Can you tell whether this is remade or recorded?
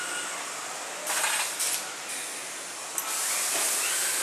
recorded